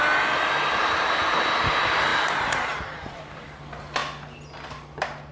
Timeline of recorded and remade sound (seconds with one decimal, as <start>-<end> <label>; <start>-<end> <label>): 0.0-2.1 recorded; 2.1-3.4 remade; 3.4-5.3 recorded